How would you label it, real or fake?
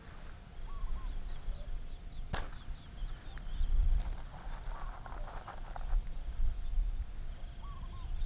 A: real